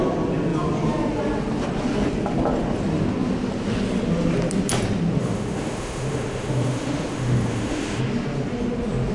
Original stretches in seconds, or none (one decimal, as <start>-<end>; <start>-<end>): 0.0-5.2; 8.0-9.1